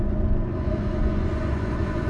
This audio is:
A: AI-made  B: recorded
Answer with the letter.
A